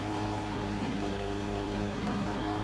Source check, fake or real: fake